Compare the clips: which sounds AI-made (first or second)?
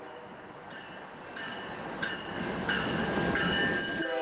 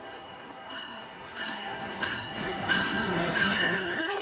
second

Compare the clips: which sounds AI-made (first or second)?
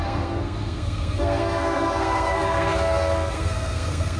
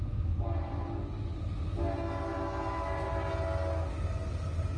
first